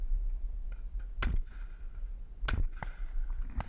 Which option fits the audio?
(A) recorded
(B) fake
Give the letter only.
A